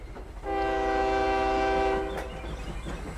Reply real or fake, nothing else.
real